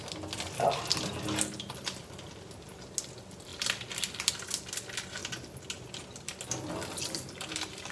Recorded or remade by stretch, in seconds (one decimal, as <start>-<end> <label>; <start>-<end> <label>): 0.0-3.5 recorded; 3.5-4.3 remade; 4.3-7.9 recorded